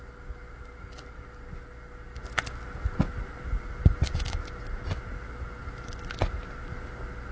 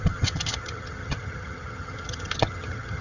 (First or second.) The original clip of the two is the first